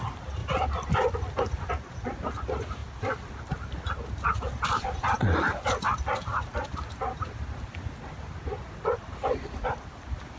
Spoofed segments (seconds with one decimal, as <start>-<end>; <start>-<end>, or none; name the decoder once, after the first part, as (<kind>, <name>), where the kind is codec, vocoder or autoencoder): 0.4-1.7 (vocoder, BigVGAN v2)